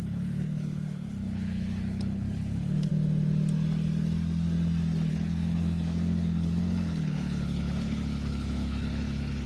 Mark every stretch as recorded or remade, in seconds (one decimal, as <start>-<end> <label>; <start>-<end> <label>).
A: 0.0-2.9 remade; 2.9-5.1 recorded; 5.1-9.5 remade